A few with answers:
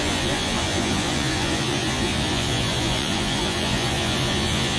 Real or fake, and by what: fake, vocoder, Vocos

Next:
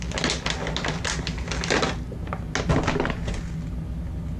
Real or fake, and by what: real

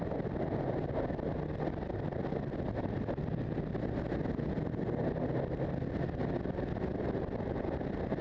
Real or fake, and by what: real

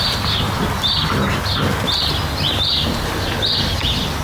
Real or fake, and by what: real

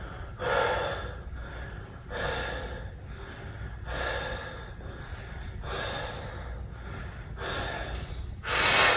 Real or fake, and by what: real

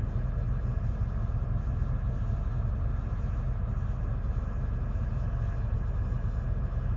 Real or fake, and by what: real